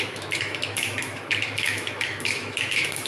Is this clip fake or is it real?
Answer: fake